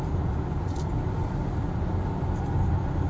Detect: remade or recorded recorded